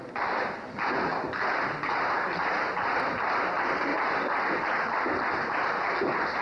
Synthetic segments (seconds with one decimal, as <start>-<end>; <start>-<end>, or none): 1.1-1.7; 3.9-4.7